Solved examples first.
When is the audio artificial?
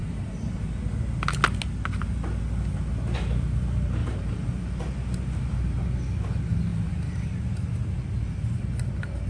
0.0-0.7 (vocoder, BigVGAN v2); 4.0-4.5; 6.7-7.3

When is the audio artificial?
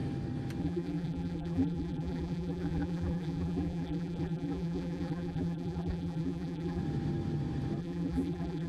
0.6-6.8 (vocoder, BigVGAN v2); 7.8-8.7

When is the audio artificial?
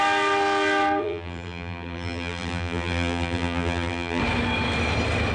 1.0-4.2 (vocoder, BigVGAN v2)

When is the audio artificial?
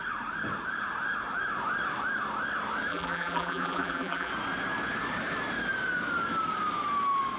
2.9-4.3 (vocoder, BigVGAN v2)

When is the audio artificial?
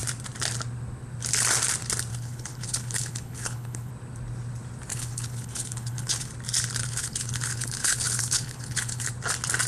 2.1-3.9 (codec, HILCodec); 4.9-6.3; 6.8-9.1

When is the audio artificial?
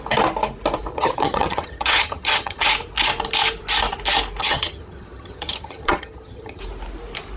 0.9-2.6 (vocoder, HiFi-GAN); 4.4-6.6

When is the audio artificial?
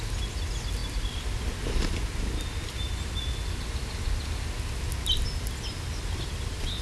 none